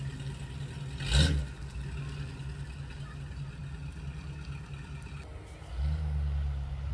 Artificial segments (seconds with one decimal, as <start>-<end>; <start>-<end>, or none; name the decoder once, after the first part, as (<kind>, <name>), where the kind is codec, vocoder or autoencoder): none